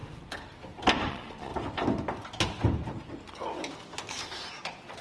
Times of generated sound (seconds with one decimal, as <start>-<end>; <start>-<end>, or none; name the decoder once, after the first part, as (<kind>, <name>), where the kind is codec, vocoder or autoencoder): 1.1-1.5 (vocoder, Vocos); 4.5-5.0